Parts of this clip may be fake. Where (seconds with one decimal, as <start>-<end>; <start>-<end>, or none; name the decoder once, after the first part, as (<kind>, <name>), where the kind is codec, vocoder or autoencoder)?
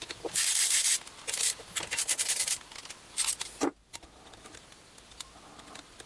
none